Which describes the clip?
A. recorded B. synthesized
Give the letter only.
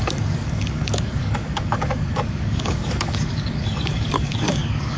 B